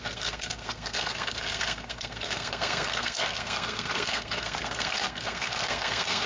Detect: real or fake fake